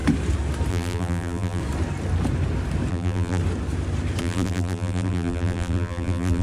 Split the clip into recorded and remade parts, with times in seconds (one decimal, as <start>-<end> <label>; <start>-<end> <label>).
0.0-0.7 recorded; 0.7-1.6 remade; 1.6-2.9 recorded; 2.9-3.4 remade; 3.4-4.2 recorded; 4.2-6.4 remade